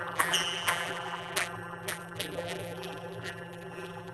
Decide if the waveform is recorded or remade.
remade